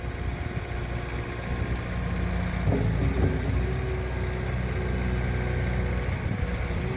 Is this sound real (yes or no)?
yes